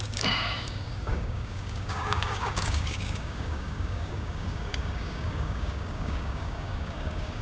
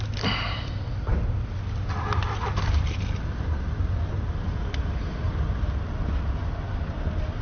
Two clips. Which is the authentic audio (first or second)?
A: second